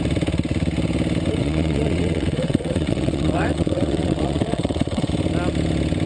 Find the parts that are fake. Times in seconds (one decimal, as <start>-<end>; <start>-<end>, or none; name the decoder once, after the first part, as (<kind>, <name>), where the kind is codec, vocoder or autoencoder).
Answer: 1.4-5.1 (vocoder, WaveNeXt)